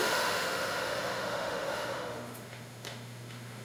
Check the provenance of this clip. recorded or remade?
remade